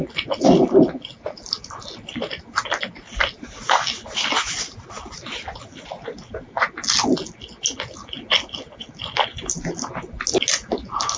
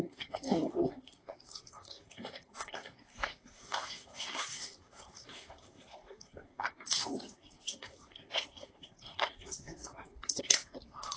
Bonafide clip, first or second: first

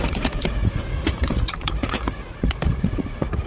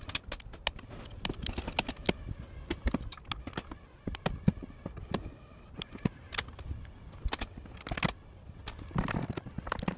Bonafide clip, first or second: second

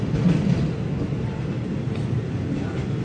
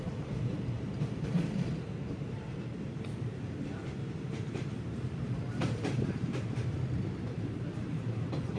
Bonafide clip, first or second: first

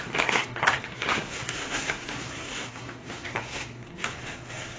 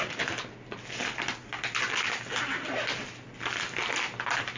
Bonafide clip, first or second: second